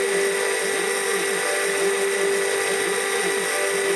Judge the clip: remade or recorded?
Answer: recorded